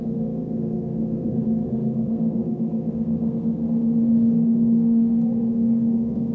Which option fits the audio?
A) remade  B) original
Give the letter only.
A